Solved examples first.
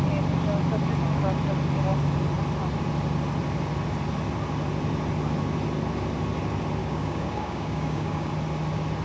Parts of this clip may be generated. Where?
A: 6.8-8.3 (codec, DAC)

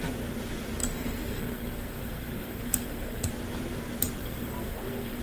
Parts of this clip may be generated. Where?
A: 0.8-3.3 (codec, SNAC); 4.2-5.2

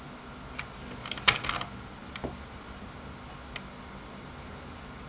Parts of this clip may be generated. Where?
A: none

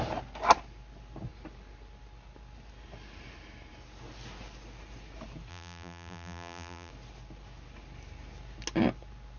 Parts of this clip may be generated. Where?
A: 5.5-6.9 (vocoder, BigVGAN v2)

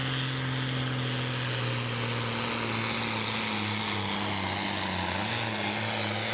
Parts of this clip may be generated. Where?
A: none

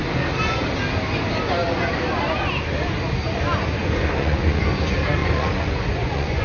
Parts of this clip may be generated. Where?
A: 3.8-4.6 (vocoder, Vocos); 5.2-6.4